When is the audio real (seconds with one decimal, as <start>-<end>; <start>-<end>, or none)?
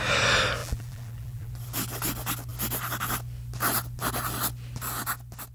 0.0-0.6; 1.5-5.5